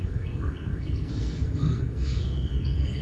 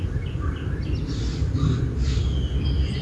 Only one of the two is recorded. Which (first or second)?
second